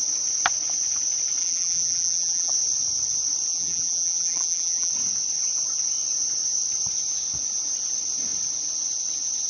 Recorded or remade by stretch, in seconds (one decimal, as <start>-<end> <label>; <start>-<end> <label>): 0.0-1.4 recorded; 1.4-2.5 remade; 2.5-3.5 recorded; 3.5-4.9 remade; 4.9-9.5 recorded